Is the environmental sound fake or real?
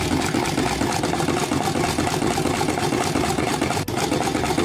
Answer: real